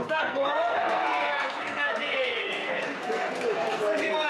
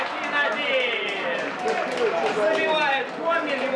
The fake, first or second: first